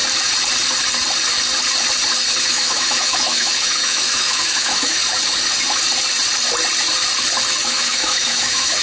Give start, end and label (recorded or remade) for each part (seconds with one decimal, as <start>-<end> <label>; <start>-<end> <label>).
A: 0.0-2.4 recorded; 2.4-5.0 remade; 5.0-7.6 recorded; 7.6-8.8 remade